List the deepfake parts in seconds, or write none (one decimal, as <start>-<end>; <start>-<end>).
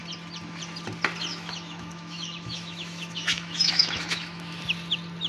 1.3-4.5